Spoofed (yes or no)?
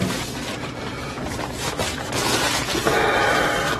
no